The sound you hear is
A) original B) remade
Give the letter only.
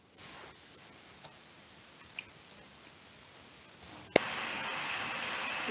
A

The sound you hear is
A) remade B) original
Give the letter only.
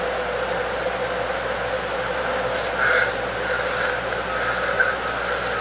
B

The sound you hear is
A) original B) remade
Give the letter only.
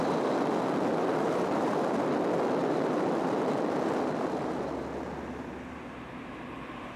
A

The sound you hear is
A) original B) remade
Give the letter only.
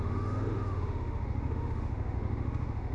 B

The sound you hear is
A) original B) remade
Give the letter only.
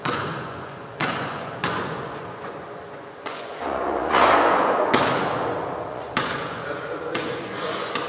B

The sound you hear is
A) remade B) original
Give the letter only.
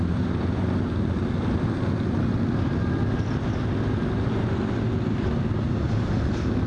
B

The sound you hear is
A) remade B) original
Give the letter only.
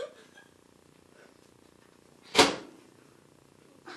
B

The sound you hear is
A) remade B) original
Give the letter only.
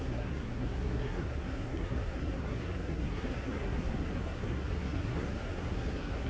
A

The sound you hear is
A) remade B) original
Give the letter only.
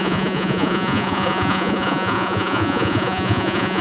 A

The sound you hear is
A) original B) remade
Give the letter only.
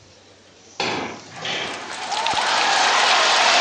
A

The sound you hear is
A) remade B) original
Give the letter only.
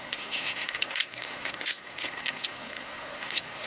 A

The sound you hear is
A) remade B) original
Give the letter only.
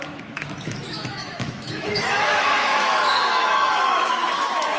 A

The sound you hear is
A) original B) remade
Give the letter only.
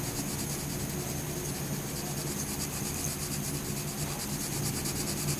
A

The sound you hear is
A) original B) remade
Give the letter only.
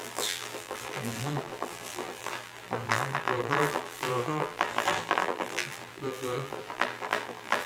B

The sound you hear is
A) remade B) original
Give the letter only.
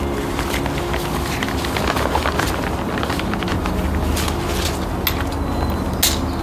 B